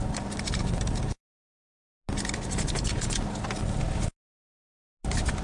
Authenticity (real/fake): real